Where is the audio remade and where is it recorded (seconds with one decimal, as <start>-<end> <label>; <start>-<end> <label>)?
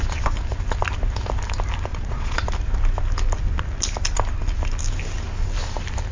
0.0-1.9 recorded; 1.9-2.5 remade; 2.5-6.1 recorded